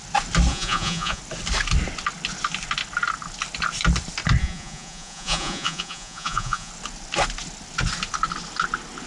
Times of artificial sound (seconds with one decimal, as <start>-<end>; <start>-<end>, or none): 0.5-1.2; 4.4-6.7